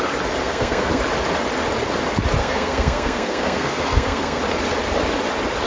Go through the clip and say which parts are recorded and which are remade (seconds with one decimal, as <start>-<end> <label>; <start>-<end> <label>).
0.0-0.4 recorded; 0.4-1.0 remade; 1.0-2.4 recorded; 2.4-4.4 remade; 4.4-5.7 recorded